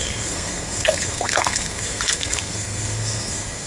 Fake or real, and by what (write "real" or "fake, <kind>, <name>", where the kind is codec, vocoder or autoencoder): fake, codec, SNAC